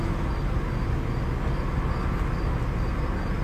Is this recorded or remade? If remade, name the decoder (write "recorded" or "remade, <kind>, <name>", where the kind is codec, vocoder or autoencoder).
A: recorded